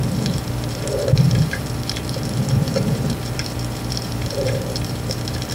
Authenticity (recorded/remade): remade